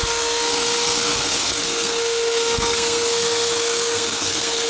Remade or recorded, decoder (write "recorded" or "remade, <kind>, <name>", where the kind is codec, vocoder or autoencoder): remade, codec, SNAC